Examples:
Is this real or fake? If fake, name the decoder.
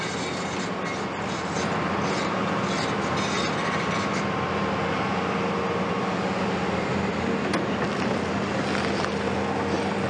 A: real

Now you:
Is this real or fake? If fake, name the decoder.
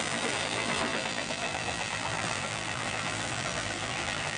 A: fake, vocoder, BigVGAN v2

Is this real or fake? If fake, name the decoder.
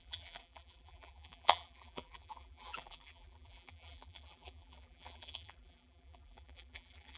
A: fake, vocoder, BigVGAN v2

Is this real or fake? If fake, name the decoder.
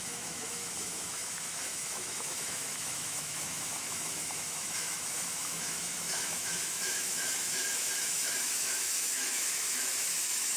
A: fake, autoencoder, DAC-VAE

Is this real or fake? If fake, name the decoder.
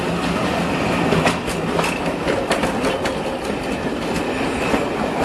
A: real